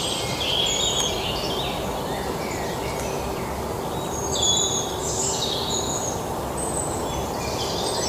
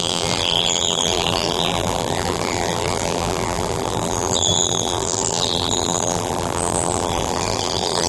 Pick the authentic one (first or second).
first